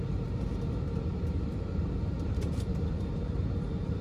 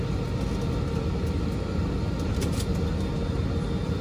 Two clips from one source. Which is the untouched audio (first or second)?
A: second